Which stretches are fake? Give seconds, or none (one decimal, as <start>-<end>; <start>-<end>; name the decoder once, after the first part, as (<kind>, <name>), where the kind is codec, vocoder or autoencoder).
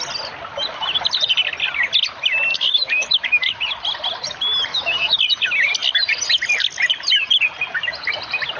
2.5-3.6 (autoencoder, DAC-VAE); 4.7-5.2